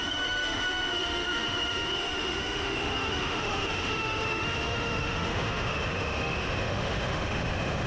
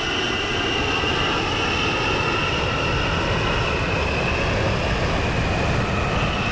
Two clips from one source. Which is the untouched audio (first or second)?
second